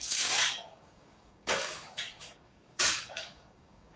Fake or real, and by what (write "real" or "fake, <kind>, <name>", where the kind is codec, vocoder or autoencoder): fake, codec, DAC